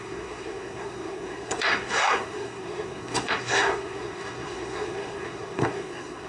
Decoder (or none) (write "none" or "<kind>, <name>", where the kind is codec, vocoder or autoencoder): codec, SNAC